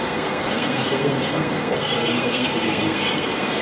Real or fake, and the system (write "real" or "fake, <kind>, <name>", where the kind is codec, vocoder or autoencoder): fake, codec, SNAC